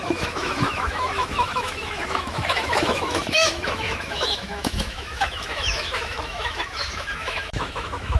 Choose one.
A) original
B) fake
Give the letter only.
B